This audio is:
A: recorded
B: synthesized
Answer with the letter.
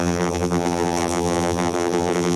B